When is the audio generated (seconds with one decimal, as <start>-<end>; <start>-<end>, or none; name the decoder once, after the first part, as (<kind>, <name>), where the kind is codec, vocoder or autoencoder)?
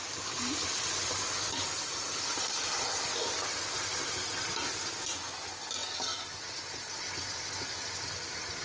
none